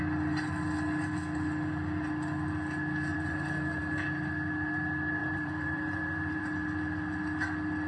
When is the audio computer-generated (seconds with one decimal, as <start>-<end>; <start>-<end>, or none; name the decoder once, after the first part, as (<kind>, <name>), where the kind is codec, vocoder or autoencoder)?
3.1-3.8 (vocoder, BigVGAN v2); 5.2-6.4